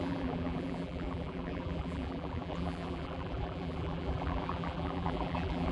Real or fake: fake